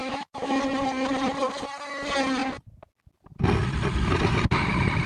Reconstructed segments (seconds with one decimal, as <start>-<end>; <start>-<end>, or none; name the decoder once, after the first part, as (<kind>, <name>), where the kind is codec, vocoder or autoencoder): 0.0-0.6 (autoencoder, DAC-VAE)